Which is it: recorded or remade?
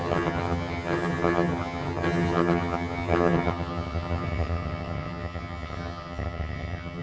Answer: remade